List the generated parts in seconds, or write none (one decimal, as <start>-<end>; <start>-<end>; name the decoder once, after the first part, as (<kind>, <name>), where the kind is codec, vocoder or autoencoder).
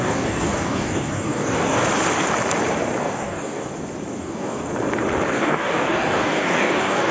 0.0-1.8 (codec, DAC); 3.0-3.7; 4.2-4.7; 5.3-7.1